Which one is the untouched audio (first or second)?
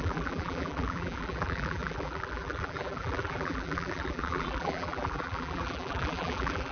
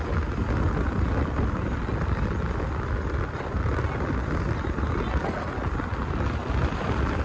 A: second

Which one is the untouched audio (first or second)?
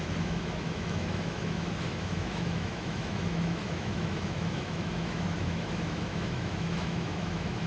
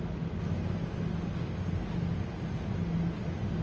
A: second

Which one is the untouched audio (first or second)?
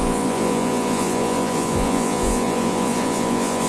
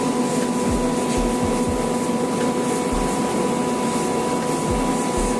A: second